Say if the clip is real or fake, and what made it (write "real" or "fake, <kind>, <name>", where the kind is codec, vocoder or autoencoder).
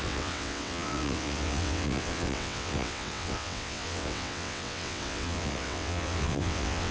fake, vocoder, WaveNeXt